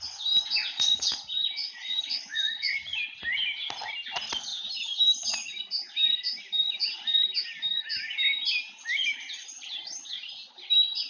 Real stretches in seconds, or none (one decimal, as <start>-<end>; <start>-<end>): 0.0-0.6; 2.8-11.1